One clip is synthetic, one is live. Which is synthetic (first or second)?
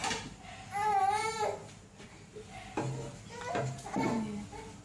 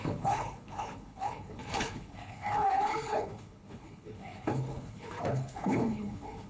second